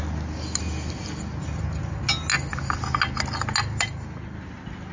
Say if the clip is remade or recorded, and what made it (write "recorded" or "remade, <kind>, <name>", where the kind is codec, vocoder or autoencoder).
recorded